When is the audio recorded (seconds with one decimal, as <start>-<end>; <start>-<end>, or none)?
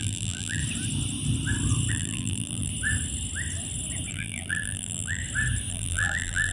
0.6-1.9; 2.7-4.1; 5.2-5.7